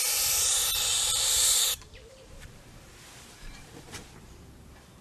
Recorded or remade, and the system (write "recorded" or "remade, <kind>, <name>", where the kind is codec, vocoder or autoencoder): remade, vocoder, BigVGAN v2